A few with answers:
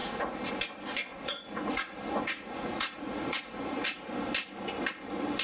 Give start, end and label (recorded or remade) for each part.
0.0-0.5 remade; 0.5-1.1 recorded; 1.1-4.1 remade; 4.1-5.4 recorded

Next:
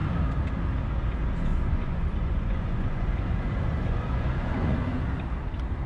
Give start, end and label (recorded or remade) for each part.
0.0-1.5 recorded; 1.5-5.0 remade; 5.0-5.9 recorded

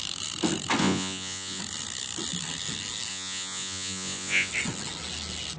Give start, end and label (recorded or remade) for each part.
0.0-0.8 recorded; 0.8-1.6 remade; 1.6-3.1 recorded; 3.1-4.5 remade; 4.5-5.6 recorded

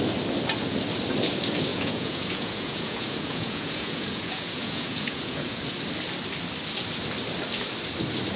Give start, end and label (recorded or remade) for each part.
0.0-1.7 recorded; 1.7-5.6 remade; 5.6-8.4 recorded